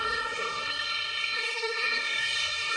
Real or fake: fake